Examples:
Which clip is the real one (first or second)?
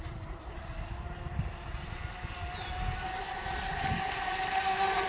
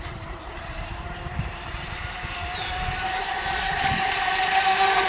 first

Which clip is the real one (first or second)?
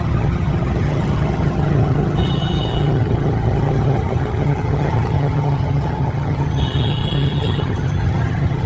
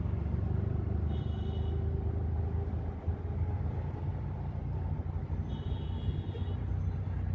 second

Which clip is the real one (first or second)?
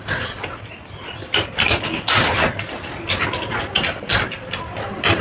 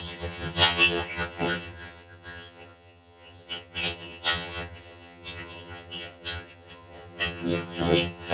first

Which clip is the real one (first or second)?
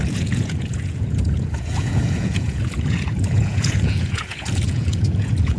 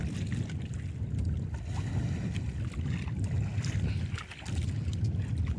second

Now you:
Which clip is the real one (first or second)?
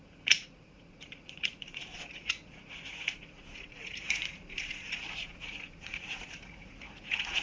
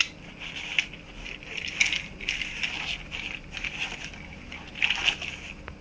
second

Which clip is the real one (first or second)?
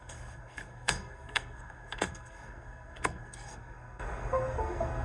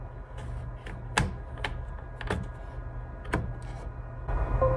second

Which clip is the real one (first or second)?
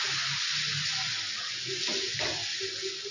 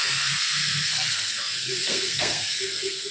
first